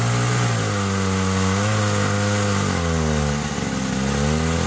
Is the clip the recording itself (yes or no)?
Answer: yes